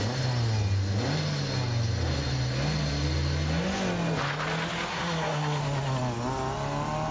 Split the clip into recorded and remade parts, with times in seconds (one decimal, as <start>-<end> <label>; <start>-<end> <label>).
0.0-4.9 recorded; 4.9-5.6 remade; 5.6-7.1 recorded